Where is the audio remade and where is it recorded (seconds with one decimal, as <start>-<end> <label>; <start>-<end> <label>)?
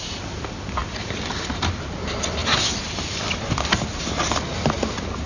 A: 0.0-0.8 recorded; 0.8-1.9 remade; 1.9-2.4 recorded; 2.4-5.3 remade